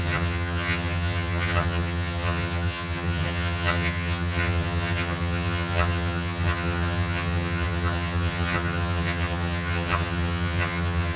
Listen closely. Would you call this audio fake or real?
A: fake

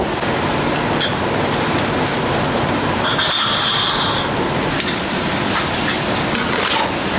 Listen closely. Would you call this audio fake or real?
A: real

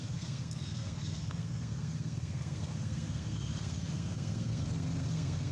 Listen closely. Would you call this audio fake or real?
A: fake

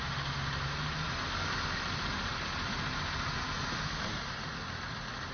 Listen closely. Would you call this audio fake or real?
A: real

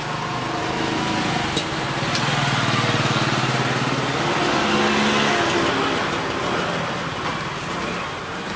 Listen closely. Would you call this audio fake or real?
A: real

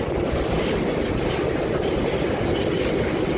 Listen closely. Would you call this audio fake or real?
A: real